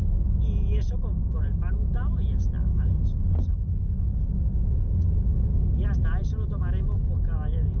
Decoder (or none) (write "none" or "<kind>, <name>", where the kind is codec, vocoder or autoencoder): none